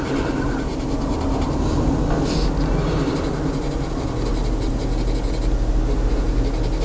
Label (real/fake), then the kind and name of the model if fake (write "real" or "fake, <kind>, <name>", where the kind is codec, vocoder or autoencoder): real